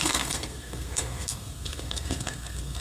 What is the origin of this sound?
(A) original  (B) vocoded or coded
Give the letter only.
B